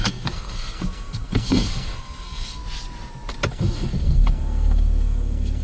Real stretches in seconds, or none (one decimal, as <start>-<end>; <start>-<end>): 2.6-3.5